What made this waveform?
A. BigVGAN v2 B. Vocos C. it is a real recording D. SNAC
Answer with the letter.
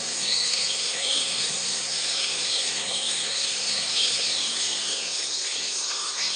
D